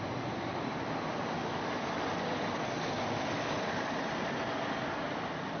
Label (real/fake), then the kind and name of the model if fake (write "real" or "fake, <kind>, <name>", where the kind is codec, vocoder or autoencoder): real